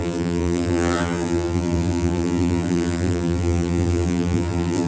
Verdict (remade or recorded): remade